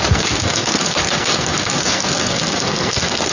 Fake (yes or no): yes